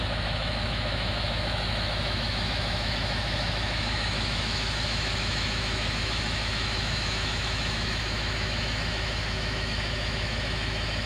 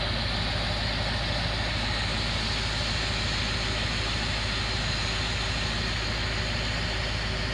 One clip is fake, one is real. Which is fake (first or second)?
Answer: first